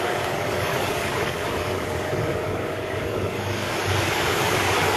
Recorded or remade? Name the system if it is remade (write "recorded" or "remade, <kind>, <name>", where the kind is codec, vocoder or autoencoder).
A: remade, codec, DAC